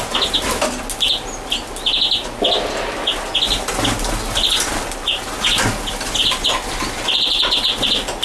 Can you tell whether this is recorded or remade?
recorded